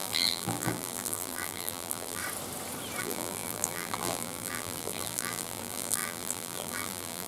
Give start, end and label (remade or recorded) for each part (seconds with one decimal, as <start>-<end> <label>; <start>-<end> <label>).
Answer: 0.0-2.2 remade; 2.2-3.0 recorded; 3.0-7.3 remade